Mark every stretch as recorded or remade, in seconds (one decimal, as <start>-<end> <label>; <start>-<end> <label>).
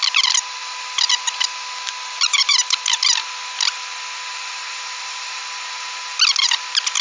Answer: 0.0-4.3 recorded; 4.3-5.4 remade; 5.4-7.0 recorded